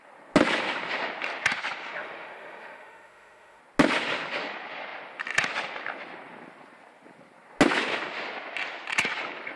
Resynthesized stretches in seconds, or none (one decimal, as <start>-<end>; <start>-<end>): 1.8-3.6